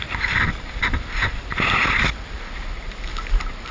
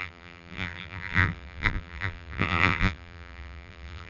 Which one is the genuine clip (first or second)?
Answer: first